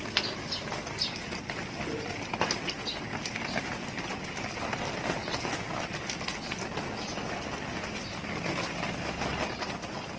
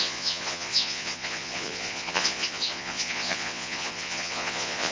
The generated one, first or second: second